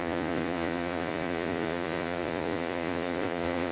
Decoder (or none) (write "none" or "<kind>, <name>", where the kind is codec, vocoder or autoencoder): vocoder, Vocos